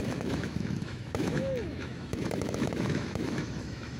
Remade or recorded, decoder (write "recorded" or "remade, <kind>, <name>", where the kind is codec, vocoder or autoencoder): remade, autoencoder, DAC-VAE